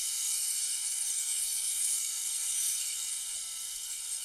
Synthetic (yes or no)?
yes